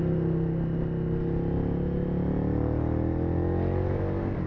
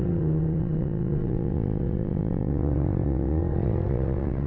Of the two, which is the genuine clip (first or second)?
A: first